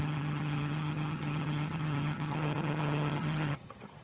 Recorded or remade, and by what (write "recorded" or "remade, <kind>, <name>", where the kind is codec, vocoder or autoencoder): remade, vocoder, HiFi-GAN